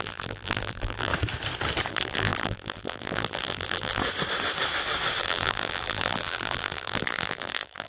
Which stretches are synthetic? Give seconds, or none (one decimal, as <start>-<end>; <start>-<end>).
0.0-1.1; 1.9-4.0; 5.2-7.9